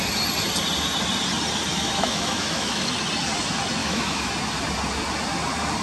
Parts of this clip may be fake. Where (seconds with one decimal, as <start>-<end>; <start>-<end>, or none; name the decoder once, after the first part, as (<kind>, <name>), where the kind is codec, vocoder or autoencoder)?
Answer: 1.7-2.9 (autoencoder, DAC-VAE); 3.8-4.3